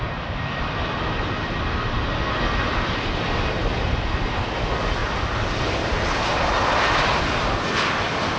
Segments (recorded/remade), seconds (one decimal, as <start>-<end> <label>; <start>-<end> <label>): 0.0-5.0 recorded; 5.0-7.2 remade; 7.2-8.4 recorded